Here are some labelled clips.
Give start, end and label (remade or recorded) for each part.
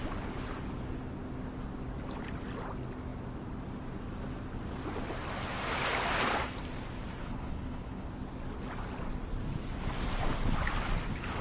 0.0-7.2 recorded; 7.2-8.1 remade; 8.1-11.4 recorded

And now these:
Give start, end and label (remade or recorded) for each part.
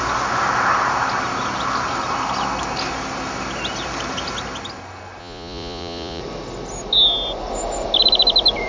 0.0-5.2 recorded; 5.2-6.2 remade; 6.2-8.7 recorded